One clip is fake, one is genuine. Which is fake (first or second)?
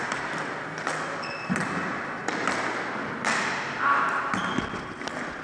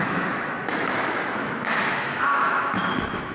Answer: second